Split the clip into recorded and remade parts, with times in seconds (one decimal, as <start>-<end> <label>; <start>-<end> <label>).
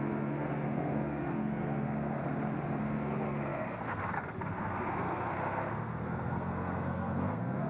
0.0-2.2 remade; 2.2-2.8 recorded; 2.8-7.7 remade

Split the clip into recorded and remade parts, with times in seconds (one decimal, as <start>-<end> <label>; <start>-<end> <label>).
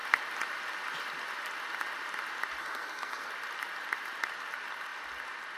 0.0-2.6 recorded; 2.6-3.3 remade; 3.3-5.6 recorded